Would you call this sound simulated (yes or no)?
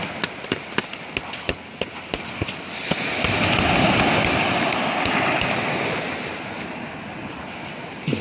no